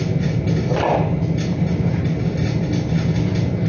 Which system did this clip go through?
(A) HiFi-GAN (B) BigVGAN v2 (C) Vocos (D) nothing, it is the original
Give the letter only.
D